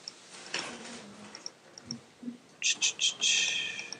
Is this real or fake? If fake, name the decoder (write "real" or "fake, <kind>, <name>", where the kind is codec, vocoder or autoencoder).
real